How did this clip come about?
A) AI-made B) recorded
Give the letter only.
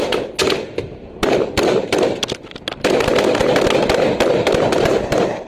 B